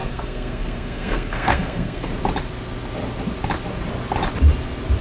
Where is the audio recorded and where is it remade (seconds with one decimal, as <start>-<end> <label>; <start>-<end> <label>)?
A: 0.0-2.1 remade; 2.1-5.0 recorded

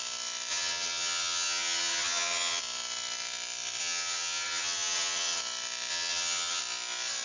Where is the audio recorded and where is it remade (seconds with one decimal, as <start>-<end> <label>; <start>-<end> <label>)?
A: 0.0-0.5 recorded; 0.5-2.6 remade; 2.6-3.8 recorded; 3.8-5.4 remade; 5.4-5.9 recorded; 5.9-6.6 remade; 6.6-7.2 recorded

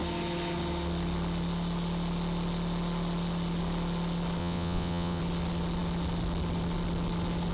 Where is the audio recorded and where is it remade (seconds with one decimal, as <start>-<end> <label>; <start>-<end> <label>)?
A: 0.0-4.4 recorded; 4.4-5.2 remade; 5.2-7.5 recorded

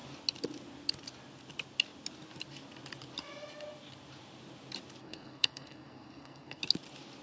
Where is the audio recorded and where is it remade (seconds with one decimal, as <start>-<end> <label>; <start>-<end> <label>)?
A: 0.0-5.0 recorded; 5.0-6.6 remade; 6.6-7.2 recorded

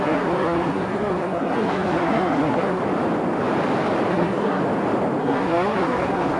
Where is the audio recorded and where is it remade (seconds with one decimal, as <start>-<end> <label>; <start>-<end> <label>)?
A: 0.0-2.8 remade; 2.8-4.1 recorded; 4.1-4.6 remade; 4.6-5.2 recorded; 5.2-6.4 remade

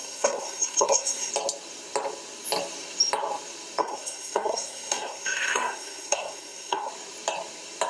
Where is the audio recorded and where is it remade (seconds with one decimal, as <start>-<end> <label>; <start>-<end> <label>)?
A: 0.0-1.3 remade; 1.3-3.8 recorded; 3.8-6.9 remade; 6.9-7.9 recorded